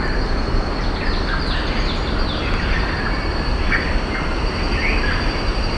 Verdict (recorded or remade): recorded